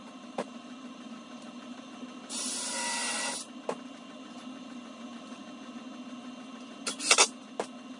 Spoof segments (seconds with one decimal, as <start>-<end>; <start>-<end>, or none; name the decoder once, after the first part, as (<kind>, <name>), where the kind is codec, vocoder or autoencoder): 0.0-3.0 (vocoder, BigVGAN v2); 4.6-5.4